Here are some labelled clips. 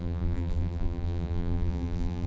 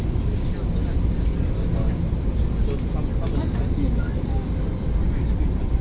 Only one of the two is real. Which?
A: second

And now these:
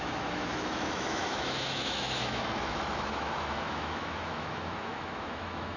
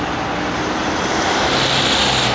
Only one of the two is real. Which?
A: second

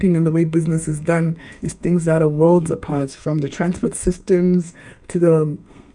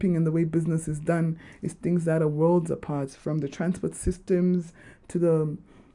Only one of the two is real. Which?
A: second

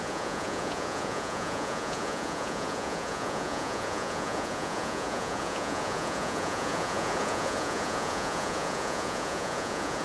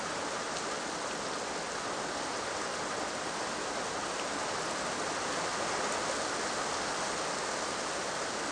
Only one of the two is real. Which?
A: second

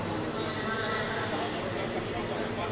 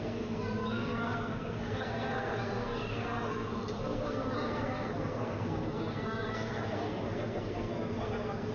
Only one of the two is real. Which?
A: first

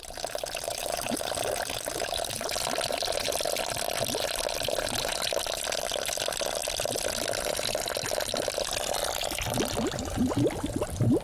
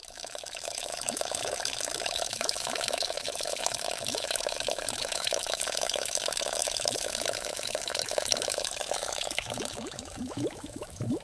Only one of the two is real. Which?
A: first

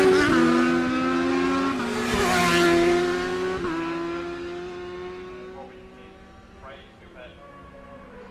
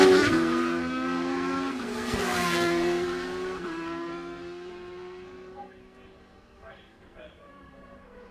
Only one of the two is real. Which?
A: first